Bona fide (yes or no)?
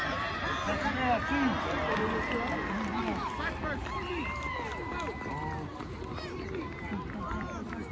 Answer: yes